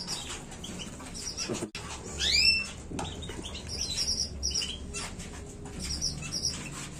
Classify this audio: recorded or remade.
recorded